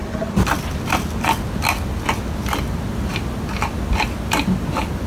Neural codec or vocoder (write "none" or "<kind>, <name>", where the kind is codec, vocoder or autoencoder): none